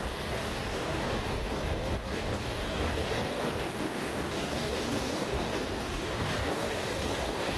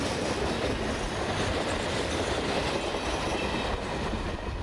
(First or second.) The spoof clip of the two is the first